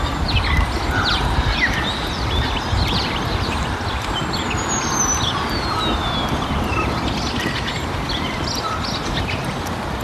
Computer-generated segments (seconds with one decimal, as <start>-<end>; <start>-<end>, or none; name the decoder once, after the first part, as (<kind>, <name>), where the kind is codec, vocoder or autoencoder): none